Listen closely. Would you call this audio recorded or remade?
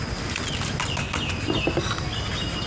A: recorded